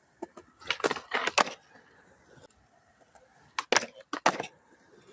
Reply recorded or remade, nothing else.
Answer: recorded